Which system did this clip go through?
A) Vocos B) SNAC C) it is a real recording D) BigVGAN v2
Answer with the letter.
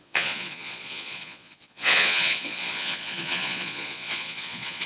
A